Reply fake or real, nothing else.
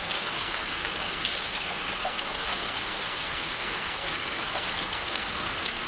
fake